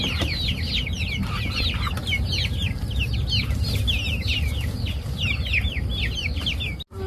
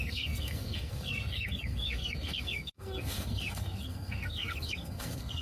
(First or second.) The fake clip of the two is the second